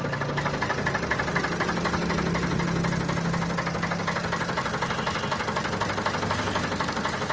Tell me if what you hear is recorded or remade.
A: recorded